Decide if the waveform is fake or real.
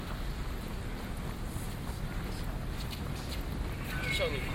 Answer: real